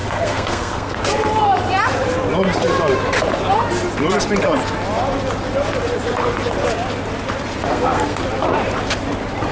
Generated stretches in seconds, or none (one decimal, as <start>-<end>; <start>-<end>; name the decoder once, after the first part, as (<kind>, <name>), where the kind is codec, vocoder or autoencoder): 0.0-1.0 (codec, SNAC); 7.7-8.2